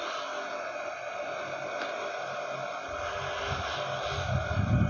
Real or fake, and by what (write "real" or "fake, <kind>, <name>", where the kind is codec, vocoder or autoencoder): real